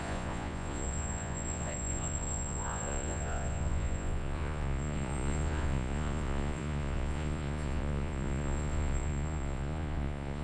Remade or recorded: remade